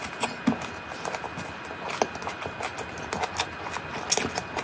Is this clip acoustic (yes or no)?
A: yes